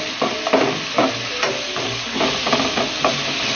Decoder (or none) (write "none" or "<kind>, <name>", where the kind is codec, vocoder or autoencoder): none